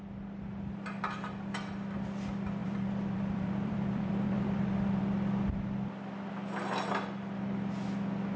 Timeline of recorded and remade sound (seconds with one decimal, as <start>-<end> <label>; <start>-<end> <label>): 0.0-2.6 recorded; 2.6-5.0 remade; 5.0-8.4 recorded